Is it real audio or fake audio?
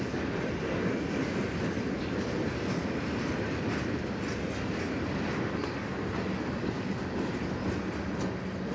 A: real